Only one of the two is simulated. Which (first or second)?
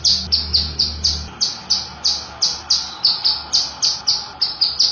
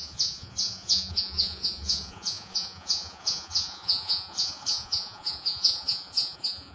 second